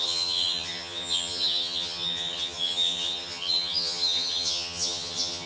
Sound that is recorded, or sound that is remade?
remade